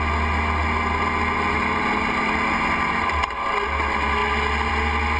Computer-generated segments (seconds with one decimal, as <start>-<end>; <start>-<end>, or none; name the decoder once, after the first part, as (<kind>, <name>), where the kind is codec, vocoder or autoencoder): none